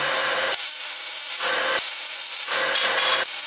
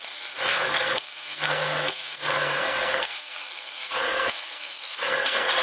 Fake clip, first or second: second